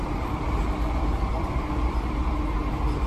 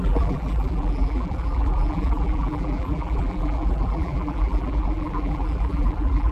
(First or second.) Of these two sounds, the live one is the first